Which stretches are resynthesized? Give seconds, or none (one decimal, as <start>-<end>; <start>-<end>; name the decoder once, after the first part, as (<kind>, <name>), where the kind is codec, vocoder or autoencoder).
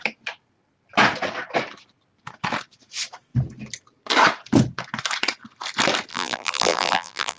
6.1-7.4 (vocoder, BigVGAN v2)